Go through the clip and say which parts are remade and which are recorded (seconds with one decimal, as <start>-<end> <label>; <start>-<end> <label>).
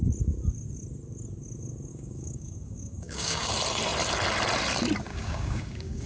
0.0-1.9 recorded; 1.9-3.5 remade; 3.5-5.1 recorded; 5.1-6.1 remade